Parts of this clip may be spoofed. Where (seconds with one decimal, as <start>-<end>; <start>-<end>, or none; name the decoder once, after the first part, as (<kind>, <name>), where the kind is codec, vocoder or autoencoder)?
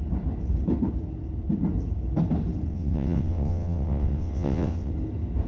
2.7-4.9 (vocoder, WaveNeXt)